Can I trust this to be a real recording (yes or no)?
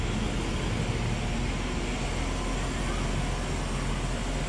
yes